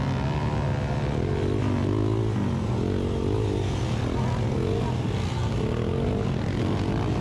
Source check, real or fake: real